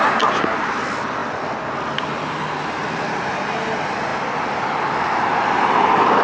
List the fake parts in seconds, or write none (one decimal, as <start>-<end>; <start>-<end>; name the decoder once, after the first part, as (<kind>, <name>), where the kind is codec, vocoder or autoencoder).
none